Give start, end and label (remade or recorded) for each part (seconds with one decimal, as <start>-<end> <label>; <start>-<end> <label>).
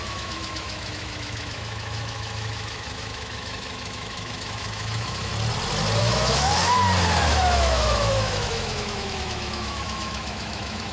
0.0-5.3 remade; 5.3-6.0 recorded; 6.0-6.5 remade; 6.5-7.3 recorded; 7.3-10.9 remade